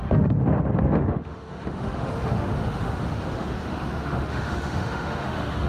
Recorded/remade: remade